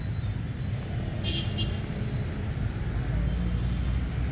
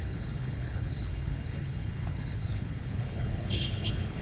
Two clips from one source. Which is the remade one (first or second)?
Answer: second